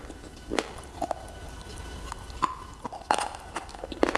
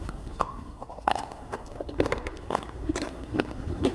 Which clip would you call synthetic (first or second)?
second